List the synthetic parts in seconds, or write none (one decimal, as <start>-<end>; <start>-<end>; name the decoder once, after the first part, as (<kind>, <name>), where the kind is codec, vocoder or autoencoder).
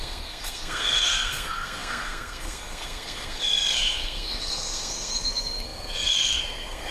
0.0-6.9 (codec, SNAC)